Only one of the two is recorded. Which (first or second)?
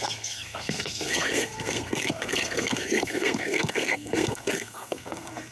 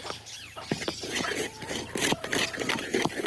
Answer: second